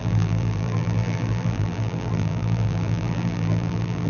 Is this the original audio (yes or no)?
no